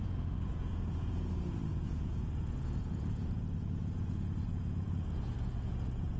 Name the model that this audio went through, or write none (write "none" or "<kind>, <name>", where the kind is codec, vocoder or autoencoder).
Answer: vocoder, Vocos